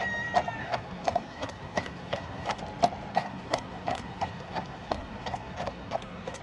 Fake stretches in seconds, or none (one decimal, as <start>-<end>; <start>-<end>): 0.6-2.6; 3.1-6.4